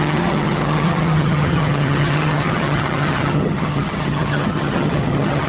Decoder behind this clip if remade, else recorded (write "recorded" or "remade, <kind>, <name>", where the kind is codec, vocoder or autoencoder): remade, vocoder, HiFi-GAN